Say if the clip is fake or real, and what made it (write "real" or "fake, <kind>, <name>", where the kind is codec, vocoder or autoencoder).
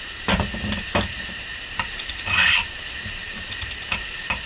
fake, vocoder, BigVGAN v2